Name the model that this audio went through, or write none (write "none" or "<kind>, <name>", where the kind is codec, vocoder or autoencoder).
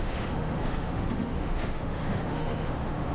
autoencoder, DAC-VAE